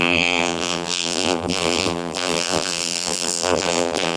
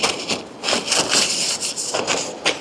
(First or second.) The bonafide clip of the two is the second